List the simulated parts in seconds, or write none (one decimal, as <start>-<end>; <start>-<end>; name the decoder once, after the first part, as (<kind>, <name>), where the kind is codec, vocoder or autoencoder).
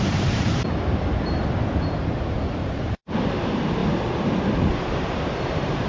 0.0-3.8 (vocoder, BigVGAN v2); 4.7-5.9